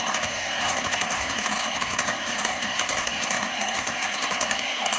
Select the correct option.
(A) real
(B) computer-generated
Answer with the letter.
B